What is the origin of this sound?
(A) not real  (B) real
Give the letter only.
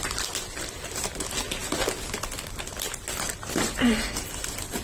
B